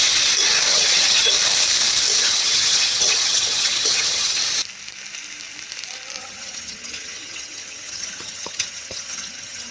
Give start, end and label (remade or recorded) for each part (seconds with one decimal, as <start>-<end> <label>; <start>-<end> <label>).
0.0-0.7 recorded; 0.7-1.3 remade; 1.3-2.2 recorded; 2.2-4.4 remade; 4.4-6.2 recorded; 6.2-9.7 remade